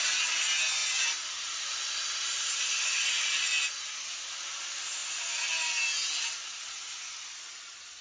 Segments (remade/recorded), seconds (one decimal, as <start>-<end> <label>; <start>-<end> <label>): 0.0-8.0 recorded